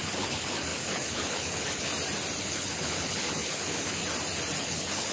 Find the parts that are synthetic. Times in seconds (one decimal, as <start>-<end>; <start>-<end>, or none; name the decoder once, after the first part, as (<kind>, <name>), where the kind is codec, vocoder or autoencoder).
0.0-1.9 (codec, HILCodec); 2.4-4.0; 4.6-5.1